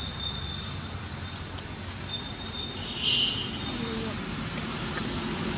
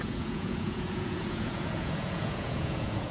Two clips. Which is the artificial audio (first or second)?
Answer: second